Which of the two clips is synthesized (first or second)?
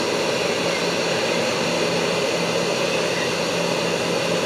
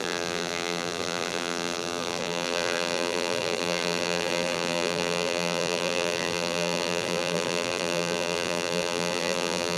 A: second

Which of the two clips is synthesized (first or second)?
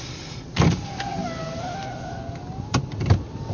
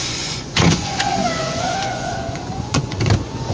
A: second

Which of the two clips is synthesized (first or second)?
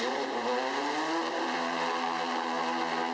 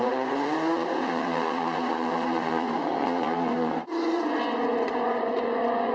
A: second